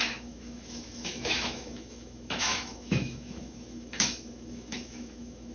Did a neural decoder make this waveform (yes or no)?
yes